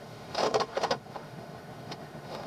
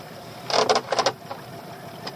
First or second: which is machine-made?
first